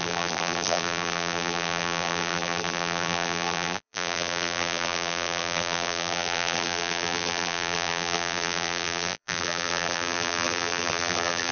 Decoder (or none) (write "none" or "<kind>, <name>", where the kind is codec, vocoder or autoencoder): vocoder, BigVGAN v2